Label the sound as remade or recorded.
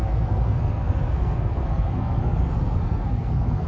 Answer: remade